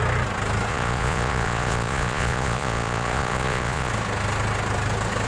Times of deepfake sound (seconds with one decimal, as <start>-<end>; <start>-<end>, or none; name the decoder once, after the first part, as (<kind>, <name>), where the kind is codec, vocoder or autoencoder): 0.7-3.9 (vocoder, Vocos)